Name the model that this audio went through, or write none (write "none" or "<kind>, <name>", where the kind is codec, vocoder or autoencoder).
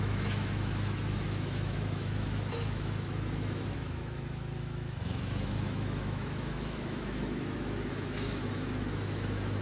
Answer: autoencoder, DAC-VAE